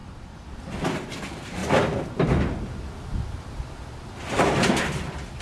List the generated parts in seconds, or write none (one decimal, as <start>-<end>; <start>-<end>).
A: 0.6-1.6; 4.8-5.4